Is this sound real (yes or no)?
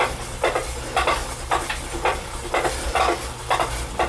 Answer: yes